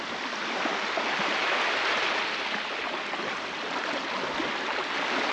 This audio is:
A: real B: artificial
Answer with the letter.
A